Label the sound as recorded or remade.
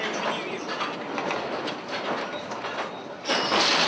recorded